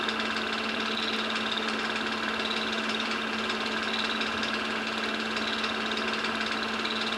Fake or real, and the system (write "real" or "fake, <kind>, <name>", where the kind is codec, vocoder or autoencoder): real